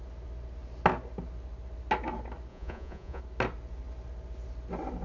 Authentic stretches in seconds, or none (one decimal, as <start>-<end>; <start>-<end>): 0.0-2.5; 3.2-5.0